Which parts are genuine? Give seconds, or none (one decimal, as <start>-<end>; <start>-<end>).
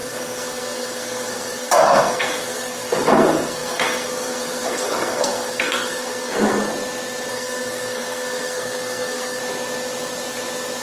6.7-7.3; 9.4-10.8